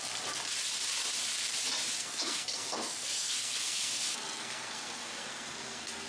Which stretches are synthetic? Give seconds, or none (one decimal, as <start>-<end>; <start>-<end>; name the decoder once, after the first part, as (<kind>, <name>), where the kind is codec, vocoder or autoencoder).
2.0-6.1 (codec, SNAC)